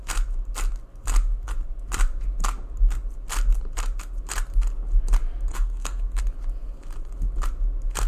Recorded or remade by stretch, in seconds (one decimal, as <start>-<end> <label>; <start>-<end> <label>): 0.0-5.5 recorded; 5.5-6.2 remade; 6.2-8.1 recorded

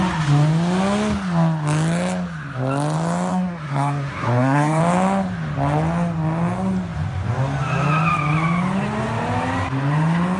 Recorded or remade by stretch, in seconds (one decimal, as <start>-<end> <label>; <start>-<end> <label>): 0.0-3.3 recorded; 3.3-4.8 remade; 4.8-10.4 recorded

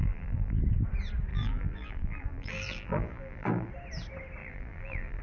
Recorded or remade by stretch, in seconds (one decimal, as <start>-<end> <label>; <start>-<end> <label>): 0.0-0.6 remade; 0.6-1.3 recorded; 1.3-3.7 remade; 3.7-4.4 recorded; 4.4-5.2 remade

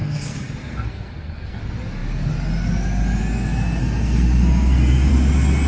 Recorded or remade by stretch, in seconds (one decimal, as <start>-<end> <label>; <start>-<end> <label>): 0.0-1.6 remade; 1.6-3.8 recorded; 3.8-5.1 remade; 5.1-5.7 recorded

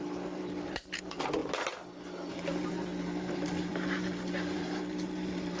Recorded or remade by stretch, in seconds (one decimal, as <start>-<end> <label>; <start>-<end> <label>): 0.0-1.4 remade; 1.4-2.3 recorded; 2.3-5.6 remade

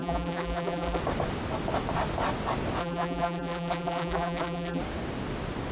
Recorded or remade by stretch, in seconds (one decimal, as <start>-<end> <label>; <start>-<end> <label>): 0.0-1.0 remade; 1.0-2.8 recorded; 2.8-4.8 remade; 4.8-5.7 recorded

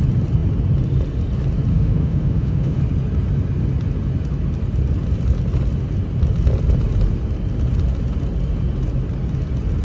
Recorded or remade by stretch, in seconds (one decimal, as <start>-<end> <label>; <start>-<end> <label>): 0.0-1.7 recorded; 1.7-2.8 remade; 2.8-9.8 recorded

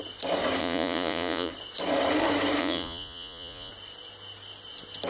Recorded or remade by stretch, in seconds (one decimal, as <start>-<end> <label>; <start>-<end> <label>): 0.0-0.6 recorded; 0.6-1.5 remade; 1.5-2.6 recorded; 2.6-3.7 remade; 3.7-5.1 recorded